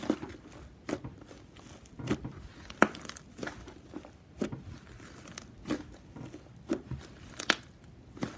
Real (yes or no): yes